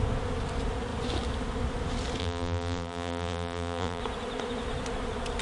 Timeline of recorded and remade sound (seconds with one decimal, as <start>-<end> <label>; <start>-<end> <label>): 0.0-2.2 recorded; 2.2-4.0 remade; 4.0-5.4 recorded